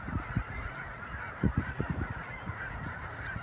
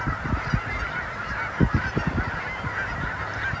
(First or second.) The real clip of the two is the second